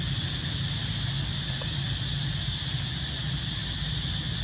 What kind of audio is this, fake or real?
real